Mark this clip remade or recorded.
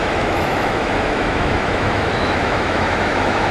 remade